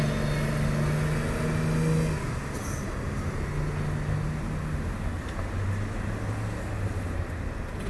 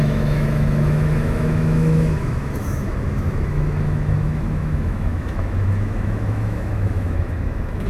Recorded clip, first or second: first